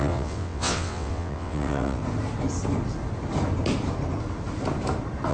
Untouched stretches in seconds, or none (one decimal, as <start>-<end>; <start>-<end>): 2.0-5.3